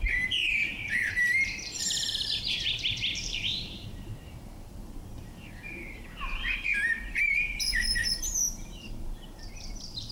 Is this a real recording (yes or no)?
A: no